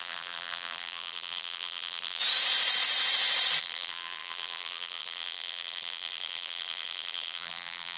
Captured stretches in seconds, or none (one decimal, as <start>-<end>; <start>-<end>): 2.2-3.6